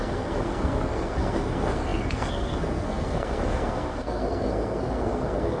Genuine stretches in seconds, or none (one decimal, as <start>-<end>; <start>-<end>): none